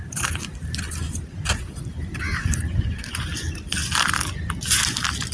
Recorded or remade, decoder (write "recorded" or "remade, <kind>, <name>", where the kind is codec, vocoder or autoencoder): recorded